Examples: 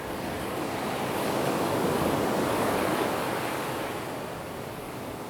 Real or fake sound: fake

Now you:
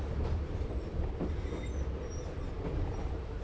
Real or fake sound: real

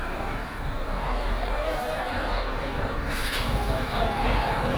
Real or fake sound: fake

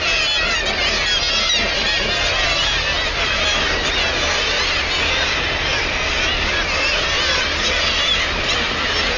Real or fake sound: real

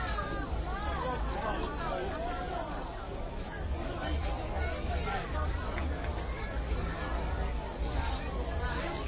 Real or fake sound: fake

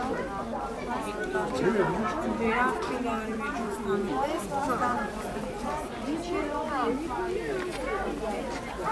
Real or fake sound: real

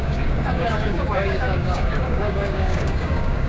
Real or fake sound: fake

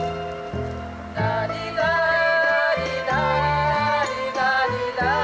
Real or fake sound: real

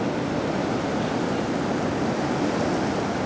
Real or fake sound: real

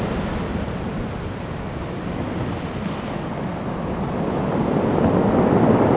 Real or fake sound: real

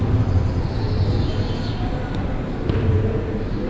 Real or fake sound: real